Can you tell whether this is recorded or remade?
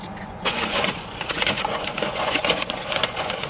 remade